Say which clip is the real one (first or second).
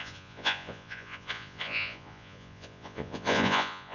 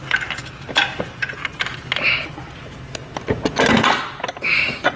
second